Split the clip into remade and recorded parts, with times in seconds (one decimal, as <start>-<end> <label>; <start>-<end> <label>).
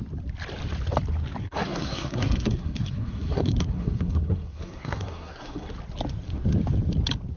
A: 0.0-1.4 recorded; 1.4-5.7 remade; 5.7-7.4 recorded